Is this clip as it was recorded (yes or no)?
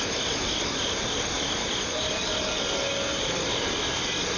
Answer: yes